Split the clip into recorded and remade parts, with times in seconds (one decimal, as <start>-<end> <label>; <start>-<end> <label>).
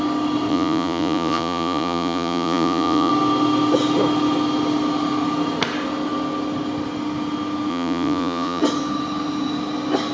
0.0-0.5 recorded; 0.5-3.1 remade; 3.1-7.7 recorded; 7.7-8.6 remade; 8.6-10.1 recorded